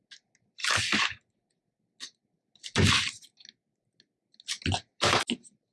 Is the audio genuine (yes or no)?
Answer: yes